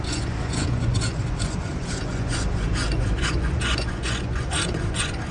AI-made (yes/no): yes